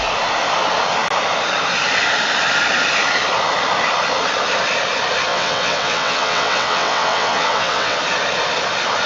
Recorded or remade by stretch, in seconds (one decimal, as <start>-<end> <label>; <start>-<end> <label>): 0.0-5.3 recorded; 5.3-8.0 remade; 8.0-9.1 recorded